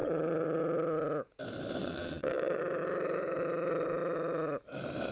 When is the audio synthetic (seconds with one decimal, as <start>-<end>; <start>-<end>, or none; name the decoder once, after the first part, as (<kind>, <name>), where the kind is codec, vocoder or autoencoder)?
0.0-0.6 (vocoder, WaveNeXt); 1.8-2.6